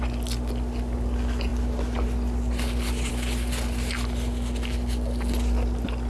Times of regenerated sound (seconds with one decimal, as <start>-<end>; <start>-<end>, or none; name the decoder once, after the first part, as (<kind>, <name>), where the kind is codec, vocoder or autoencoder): none